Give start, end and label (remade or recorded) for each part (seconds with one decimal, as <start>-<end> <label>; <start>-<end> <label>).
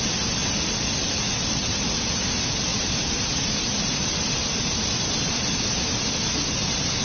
0.0-7.0 recorded